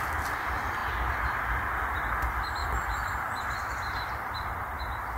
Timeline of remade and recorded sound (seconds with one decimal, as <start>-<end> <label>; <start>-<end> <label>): 0.0-2.6 recorded; 2.6-4.7 remade; 4.7-5.2 recorded